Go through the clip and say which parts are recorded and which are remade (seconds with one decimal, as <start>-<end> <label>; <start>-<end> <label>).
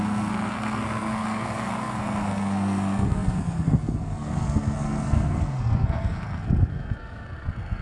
0.0-7.8 remade